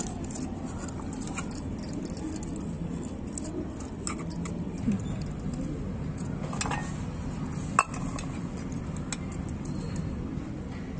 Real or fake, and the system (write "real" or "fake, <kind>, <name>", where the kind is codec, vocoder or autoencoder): real